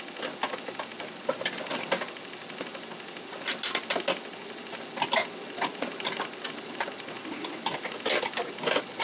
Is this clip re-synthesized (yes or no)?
no